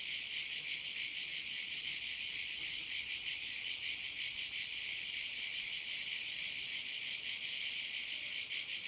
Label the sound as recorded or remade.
remade